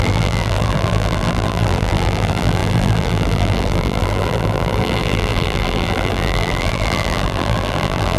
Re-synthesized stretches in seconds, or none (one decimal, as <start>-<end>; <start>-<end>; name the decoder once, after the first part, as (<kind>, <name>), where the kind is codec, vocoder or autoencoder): 0.0-8.2 (vocoder, BigVGAN v2)